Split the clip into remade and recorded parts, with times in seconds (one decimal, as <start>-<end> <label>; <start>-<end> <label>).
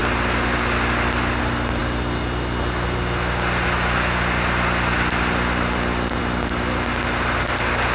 0.0-7.9 recorded